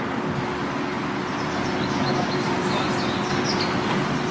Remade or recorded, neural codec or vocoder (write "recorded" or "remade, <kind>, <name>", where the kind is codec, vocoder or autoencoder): recorded